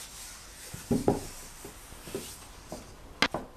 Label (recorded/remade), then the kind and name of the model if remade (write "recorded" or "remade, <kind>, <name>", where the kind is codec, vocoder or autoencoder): recorded